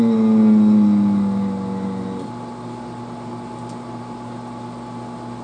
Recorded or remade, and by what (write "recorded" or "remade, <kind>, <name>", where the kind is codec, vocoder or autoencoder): recorded